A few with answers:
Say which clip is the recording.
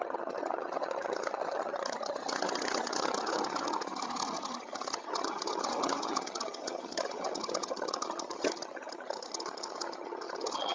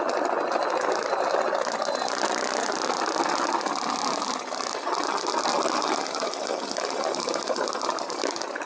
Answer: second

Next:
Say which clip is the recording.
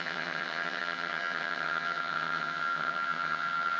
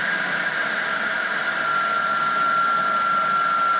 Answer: second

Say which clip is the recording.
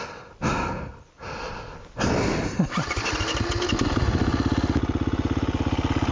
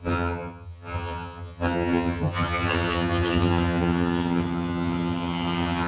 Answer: first